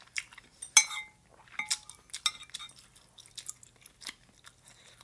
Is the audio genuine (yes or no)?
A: yes